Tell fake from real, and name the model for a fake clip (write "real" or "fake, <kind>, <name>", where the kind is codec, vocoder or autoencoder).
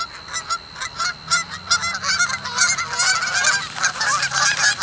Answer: real